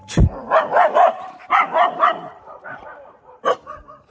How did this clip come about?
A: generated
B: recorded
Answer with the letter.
A